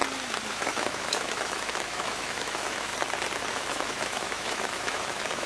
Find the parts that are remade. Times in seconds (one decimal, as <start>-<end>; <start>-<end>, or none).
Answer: 0.5-2.9; 3.5-5.5